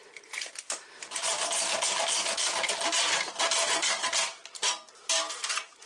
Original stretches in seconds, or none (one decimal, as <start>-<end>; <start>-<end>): 0.0-5.9

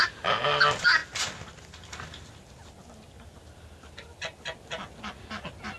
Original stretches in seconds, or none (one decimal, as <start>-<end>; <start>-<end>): 0.0-5.8

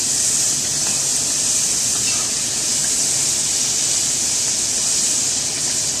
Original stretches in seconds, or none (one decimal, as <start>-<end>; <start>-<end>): 0.0-6.0

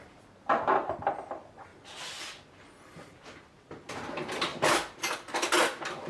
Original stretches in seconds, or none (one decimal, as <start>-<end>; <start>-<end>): 1.7-4.1; 4.5-6.1

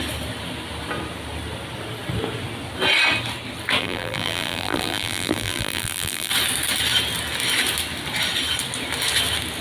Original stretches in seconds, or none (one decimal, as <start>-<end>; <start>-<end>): 0.0-3.8; 6.3-9.6

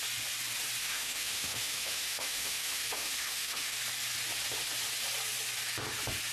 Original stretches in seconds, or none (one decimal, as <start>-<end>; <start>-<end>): 0.0-0.8; 3.8-6.3